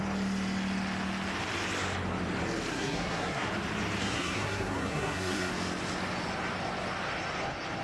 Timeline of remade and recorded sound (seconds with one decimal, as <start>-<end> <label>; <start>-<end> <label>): 0.0-2.7 recorded; 2.7-3.5 remade; 3.5-4.0 recorded; 4.0-5.5 remade; 5.5-7.8 recorded